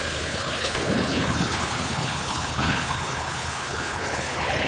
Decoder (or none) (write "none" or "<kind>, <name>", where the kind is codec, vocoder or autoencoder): codec, HILCodec